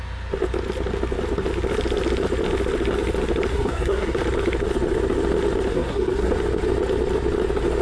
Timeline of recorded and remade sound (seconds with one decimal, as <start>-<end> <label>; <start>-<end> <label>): 0.0-3.5 recorded; 3.5-4.2 remade; 4.2-5.7 recorded; 5.7-6.3 remade; 6.3-7.8 recorded